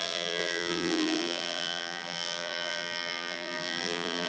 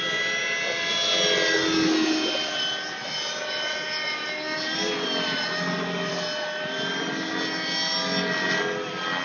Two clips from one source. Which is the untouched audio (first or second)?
second